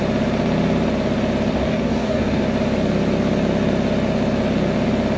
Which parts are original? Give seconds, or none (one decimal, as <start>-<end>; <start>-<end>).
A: 0.0-1.5; 2.4-5.2